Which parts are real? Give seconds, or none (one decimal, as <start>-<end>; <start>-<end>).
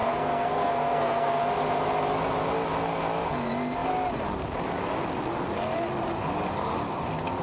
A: 1.4-7.4